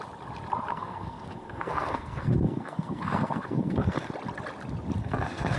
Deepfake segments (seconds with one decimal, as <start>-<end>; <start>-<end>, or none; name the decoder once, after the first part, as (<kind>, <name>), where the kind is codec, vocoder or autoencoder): 0.7-4.1 (codec, SNAC); 5.0-5.6